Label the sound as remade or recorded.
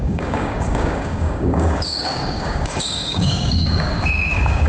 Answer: remade